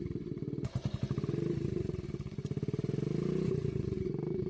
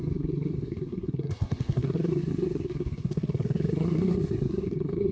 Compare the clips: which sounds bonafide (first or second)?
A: first